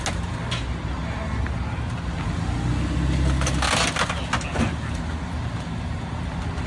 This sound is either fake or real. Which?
real